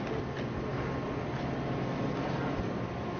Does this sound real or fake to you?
real